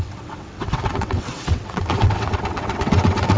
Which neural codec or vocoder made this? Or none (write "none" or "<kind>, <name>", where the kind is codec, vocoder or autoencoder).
vocoder, WaveNeXt